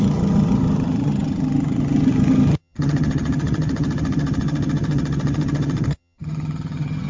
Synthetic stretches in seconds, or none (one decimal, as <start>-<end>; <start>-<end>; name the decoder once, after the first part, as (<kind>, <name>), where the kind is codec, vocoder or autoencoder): 0.0-7.1 (vocoder, HiFi-GAN)